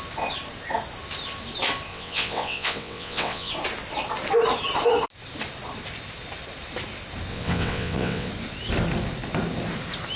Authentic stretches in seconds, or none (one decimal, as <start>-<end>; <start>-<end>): 0.0-1.9; 3.5-7.3; 8.3-10.2